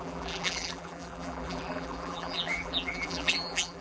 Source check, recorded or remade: remade